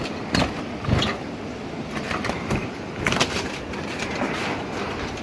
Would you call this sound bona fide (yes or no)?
yes